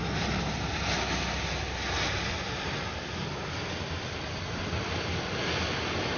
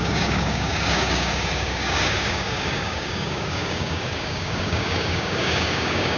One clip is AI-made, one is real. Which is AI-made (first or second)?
second